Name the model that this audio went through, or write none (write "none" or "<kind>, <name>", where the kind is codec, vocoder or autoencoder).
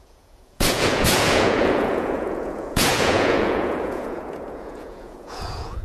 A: vocoder, Vocos